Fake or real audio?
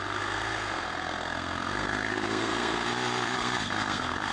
fake